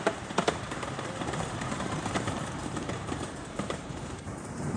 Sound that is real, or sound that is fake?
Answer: fake